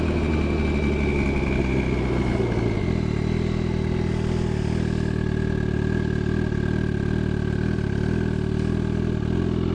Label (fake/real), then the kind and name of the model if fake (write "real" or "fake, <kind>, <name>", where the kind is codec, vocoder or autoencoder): real